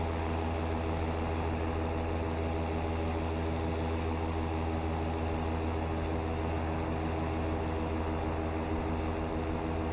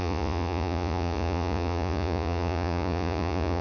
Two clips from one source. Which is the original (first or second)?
first